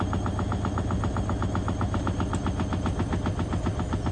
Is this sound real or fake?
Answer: real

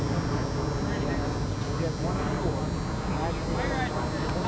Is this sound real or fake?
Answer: real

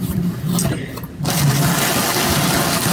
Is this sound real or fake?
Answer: real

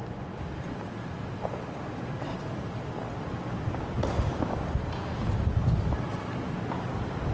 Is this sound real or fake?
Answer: real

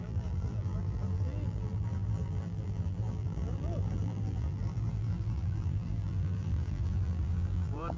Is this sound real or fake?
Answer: fake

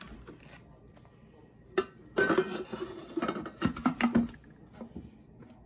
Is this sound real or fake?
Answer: real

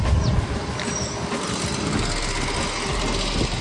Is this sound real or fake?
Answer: real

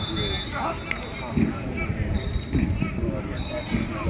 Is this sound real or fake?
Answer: real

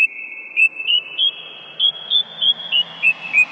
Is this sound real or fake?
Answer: real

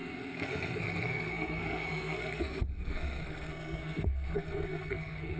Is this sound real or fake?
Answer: fake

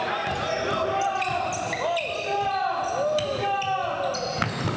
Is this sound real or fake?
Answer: real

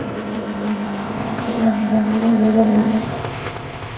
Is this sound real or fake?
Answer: fake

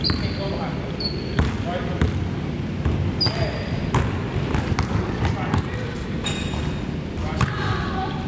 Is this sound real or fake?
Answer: real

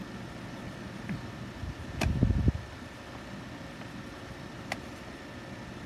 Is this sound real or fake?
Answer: real